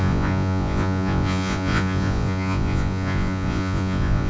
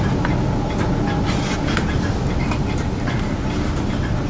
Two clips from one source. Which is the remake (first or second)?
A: first